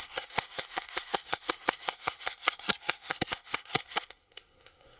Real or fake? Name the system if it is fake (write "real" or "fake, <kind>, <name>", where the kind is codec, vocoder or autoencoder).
fake, codec, SNAC